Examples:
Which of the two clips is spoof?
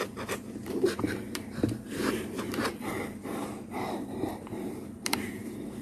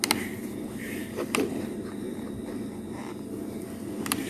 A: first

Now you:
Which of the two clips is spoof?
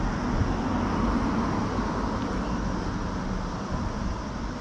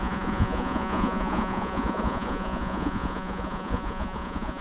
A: second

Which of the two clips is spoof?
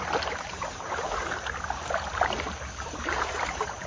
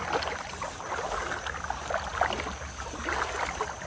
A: first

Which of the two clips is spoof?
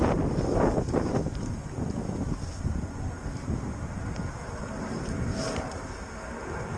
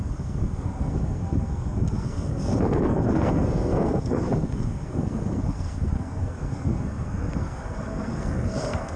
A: second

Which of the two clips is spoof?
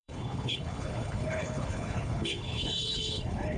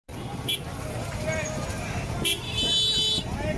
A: first